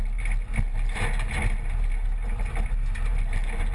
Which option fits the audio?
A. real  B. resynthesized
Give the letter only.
A